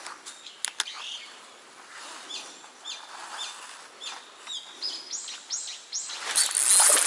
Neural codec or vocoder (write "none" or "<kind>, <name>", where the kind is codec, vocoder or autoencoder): none